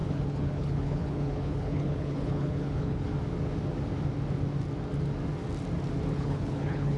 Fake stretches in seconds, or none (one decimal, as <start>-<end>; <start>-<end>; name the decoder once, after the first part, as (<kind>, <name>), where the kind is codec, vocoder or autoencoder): 0.0-3.1 (codec, HILCodec); 6.1-7.0